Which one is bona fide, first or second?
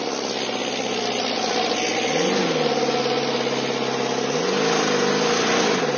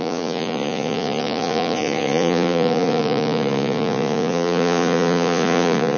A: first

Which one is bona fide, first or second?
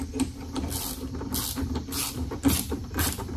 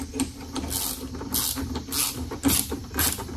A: second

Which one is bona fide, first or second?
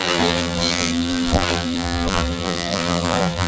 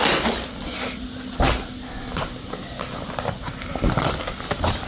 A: second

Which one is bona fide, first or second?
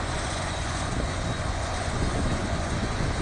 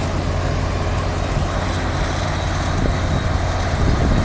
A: second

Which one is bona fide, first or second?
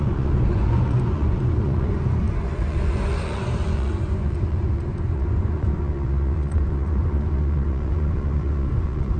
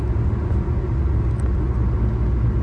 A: second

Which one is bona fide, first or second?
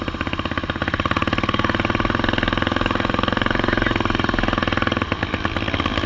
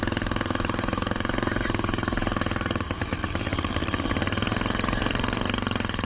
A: first